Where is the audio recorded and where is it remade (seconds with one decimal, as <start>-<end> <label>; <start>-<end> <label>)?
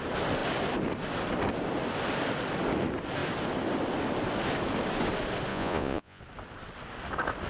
0.0-5.5 recorded; 5.5-6.2 remade; 6.2-7.5 recorded